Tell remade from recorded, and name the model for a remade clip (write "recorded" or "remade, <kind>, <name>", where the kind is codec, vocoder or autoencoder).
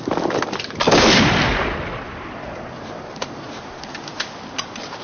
recorded